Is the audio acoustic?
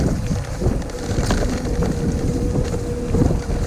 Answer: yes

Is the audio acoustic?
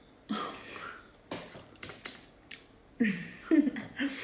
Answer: no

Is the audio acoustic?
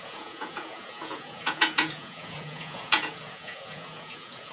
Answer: no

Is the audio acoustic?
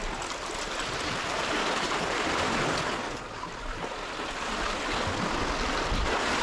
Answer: yes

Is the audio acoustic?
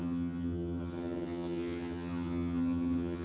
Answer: no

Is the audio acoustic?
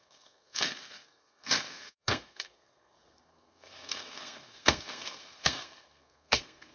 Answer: no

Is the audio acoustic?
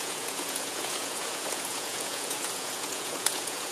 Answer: no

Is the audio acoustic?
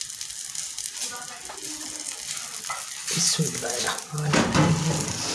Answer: yes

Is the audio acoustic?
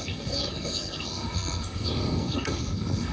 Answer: no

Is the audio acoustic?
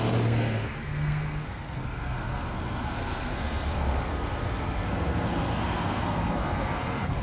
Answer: no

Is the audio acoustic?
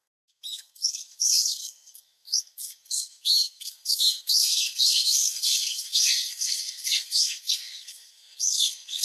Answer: no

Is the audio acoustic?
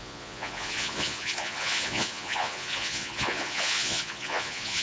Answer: no